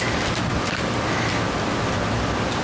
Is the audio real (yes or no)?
yes